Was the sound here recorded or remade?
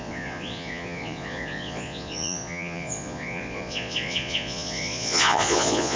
remade